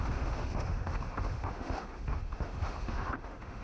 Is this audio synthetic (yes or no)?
yes